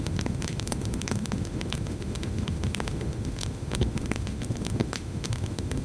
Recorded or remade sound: remade